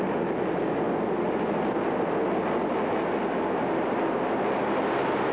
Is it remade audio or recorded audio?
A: recorded